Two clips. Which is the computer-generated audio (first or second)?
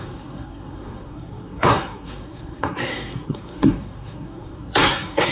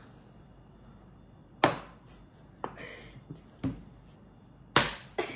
first